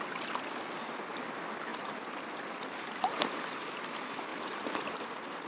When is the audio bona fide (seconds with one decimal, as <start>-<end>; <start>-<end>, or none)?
0.0-4.3; 4.9-5.5